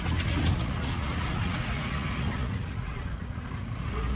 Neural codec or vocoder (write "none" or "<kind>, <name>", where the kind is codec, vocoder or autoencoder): vocoder, Vocos